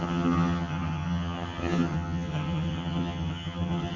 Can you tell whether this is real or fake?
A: fake